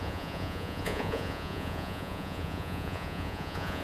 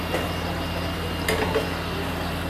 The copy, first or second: first